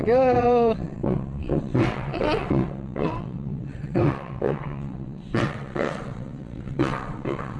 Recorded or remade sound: remade